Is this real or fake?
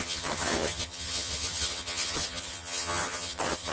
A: fake